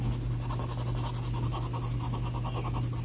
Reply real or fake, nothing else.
real